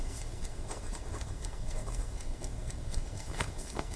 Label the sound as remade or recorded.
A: remade